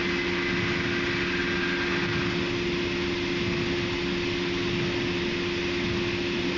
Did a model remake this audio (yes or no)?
no